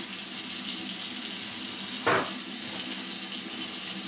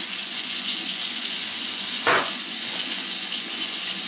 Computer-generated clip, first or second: second